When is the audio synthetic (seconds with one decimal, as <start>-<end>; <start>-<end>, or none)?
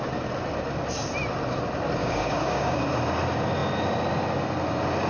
2.0-2.8